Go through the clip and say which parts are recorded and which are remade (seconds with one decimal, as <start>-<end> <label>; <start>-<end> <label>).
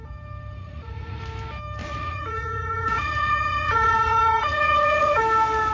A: 0.0-0.6 recorded; 0.6-1.2 remade; 1.2-1.8 recorded; 1.8-5.2 remade; 5.2-5.7 recorded